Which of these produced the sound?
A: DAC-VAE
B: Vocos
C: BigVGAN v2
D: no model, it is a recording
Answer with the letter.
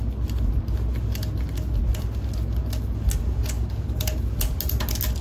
D